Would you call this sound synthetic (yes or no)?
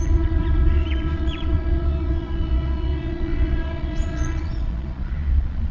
yes